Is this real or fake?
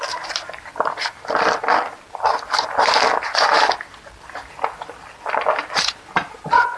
real